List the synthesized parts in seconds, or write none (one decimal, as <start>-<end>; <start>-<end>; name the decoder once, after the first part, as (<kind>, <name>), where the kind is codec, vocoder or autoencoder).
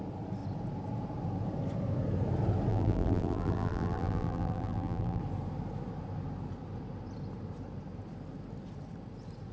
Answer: 2.7-5.2 (vocoder, BigVGAN v2)